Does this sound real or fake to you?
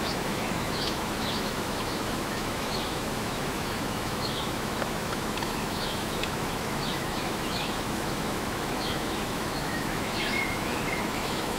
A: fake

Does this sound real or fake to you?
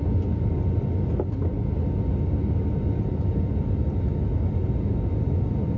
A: real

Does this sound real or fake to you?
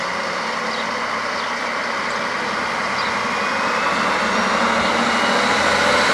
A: real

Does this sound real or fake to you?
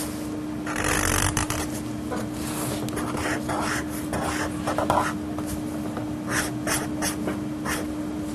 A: real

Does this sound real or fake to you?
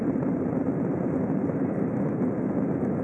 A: real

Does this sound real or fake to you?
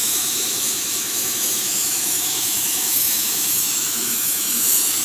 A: fake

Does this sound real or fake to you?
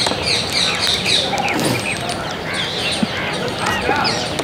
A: real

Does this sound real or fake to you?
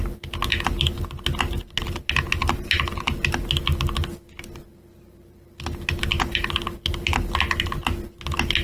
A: real